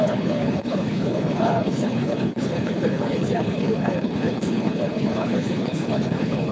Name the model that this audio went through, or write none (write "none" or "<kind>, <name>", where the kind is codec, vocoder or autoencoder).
codec, HILCodec